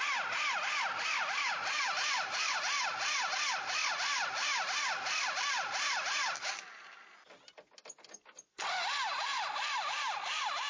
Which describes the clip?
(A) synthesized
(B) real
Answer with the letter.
B